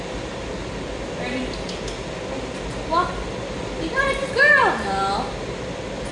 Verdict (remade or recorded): recorded